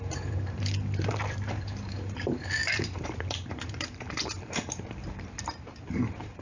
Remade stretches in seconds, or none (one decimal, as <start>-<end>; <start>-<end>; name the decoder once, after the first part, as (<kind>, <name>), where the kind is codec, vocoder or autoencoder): 0.0-6.4 (vocoder, BigVGAN v2)